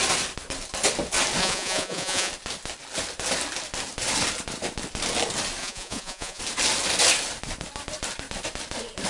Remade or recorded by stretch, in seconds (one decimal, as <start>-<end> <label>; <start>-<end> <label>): 0.0-1.4 recorded; 1.4-2.3 remade; 2.3-5.6 recorded; 5.6-6.4 remade; 6.4-9.1 recorded